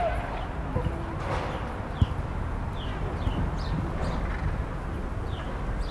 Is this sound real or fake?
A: real